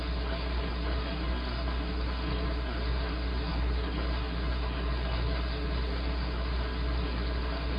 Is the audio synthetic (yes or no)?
yes